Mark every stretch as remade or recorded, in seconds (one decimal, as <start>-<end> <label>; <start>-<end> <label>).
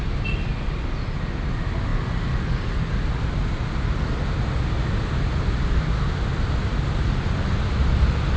0.0-8.4 recorded